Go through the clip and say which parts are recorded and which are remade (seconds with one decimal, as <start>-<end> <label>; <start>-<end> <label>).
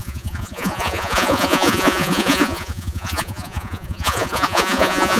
0.0-5.2 remade